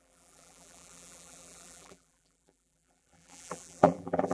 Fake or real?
fake